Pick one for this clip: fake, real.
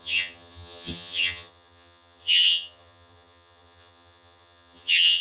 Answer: fake